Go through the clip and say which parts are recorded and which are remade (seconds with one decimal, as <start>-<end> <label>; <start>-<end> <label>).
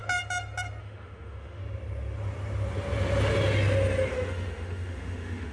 0.0-0.8 recorded; 0.8-1.6 remade; 1.6-4.1 recorded; 4.1-5.5 remade